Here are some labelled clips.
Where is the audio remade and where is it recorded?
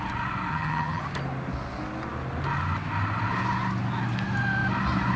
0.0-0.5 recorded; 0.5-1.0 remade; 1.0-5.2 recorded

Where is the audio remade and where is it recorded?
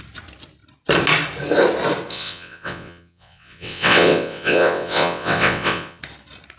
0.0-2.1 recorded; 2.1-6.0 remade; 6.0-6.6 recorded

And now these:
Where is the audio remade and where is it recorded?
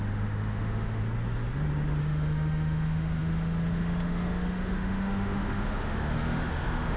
0.0-1.0 remade; 1.0-2.0 recorded; 2.0-7.0 remade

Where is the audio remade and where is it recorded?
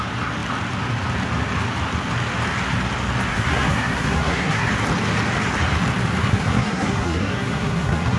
0.0-3.3 recorded; 3.3-4.7 remade; 4.7-6.2 recorded; 6.2-8.2 remade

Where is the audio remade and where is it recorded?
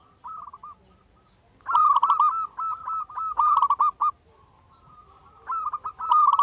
0.0-6.4 recorded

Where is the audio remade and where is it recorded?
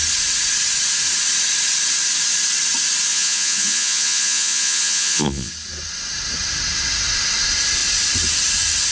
0.0-3.1 recorded; 3.1-5.5 remade; 5.5-8.9 recorded